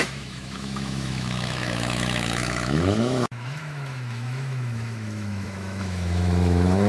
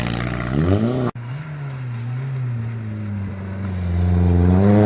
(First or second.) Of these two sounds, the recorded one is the second